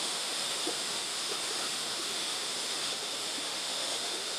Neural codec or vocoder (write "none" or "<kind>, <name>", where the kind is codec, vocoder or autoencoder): autoencoder, DAC-VAE